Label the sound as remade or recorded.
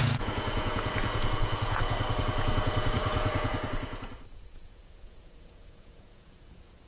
remade